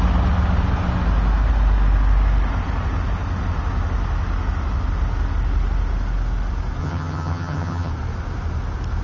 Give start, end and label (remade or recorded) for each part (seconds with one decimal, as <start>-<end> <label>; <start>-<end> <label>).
0.0-6.8 recorded; 6.8-7.9 remade; 7.9-9.0 recorded